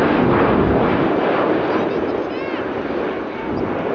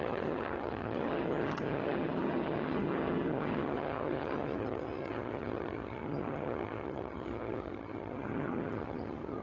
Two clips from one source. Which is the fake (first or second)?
second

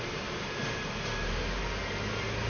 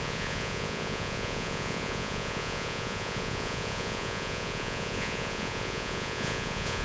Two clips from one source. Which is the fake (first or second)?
second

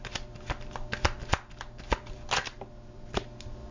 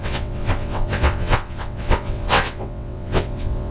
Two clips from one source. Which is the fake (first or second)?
second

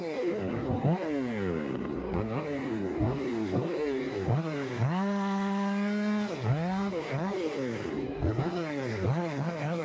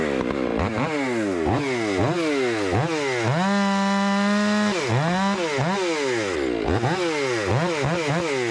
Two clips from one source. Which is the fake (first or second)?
first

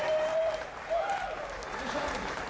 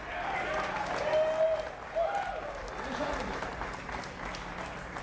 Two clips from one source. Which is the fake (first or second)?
first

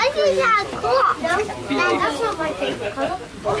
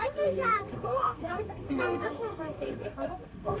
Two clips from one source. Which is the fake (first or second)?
second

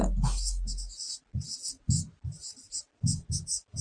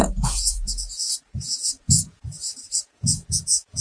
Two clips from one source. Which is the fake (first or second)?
second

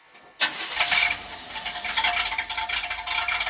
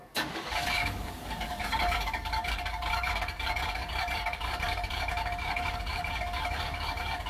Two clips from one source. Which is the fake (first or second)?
second